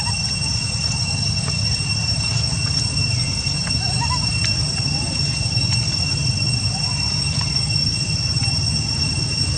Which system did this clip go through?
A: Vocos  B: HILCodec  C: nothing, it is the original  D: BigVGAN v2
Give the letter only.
C